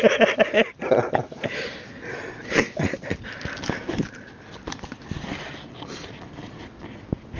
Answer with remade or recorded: recorded